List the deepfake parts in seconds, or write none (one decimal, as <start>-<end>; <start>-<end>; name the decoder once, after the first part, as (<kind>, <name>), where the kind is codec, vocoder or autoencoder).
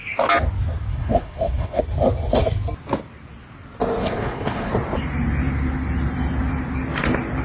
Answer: 0.9-1.8 (codec, HILCodec); 4.0-4.7